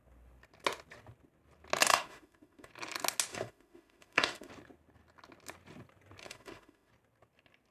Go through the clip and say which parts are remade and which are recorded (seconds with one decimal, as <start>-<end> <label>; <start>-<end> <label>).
0.0-1.9 recorded; 1.9-2.7 remade; 2.7-3.3 recorded; 3.3-4.5 remade; 4.5-6.2 recorded; 6.2-6.9 remade; 6.9-7.7 recorded